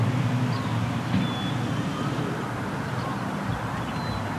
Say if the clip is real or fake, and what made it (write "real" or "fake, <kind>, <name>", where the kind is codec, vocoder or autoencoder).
real